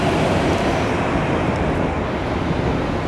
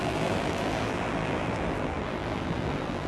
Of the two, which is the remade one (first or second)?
second